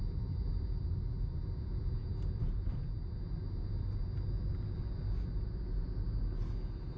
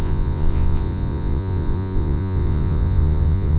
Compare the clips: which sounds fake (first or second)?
second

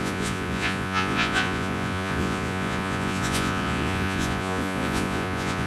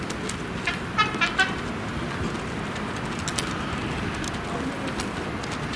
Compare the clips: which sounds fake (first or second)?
first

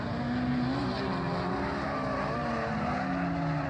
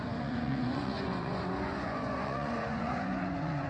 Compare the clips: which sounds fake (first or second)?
second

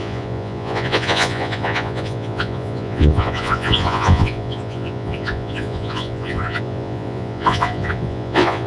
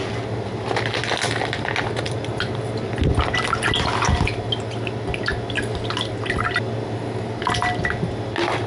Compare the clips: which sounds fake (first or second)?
first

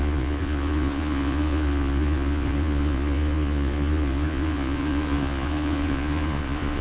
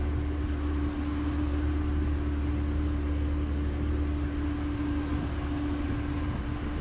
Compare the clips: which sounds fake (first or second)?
first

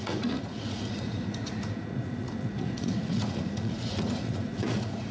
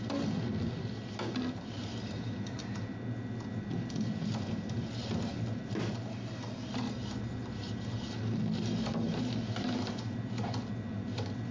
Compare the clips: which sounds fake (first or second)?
first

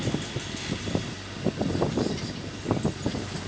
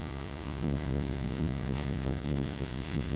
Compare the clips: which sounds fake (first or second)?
second